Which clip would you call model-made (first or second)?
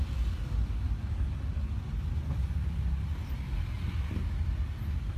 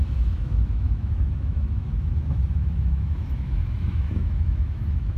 second